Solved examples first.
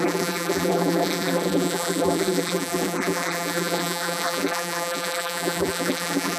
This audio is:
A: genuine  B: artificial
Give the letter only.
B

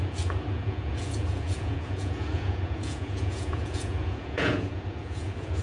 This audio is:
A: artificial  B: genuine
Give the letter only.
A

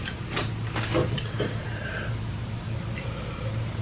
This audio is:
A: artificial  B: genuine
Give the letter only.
A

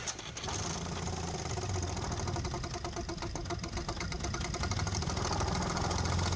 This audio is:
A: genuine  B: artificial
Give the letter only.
A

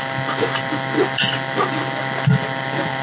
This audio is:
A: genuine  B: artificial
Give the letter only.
A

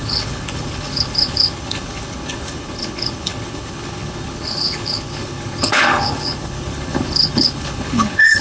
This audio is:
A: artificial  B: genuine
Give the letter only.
A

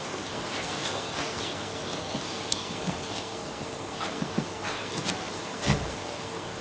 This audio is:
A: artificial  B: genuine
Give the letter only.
A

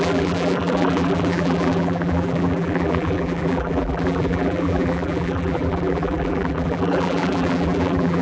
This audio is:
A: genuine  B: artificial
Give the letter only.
B